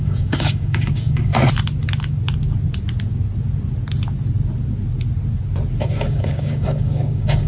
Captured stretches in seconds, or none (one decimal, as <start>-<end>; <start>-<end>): 1.3-5.8